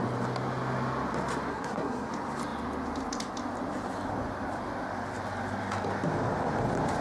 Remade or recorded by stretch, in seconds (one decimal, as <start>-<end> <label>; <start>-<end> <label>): 0.0-1.5 recorded; 1.5-2.1 remade; 2.1-7.0 recorded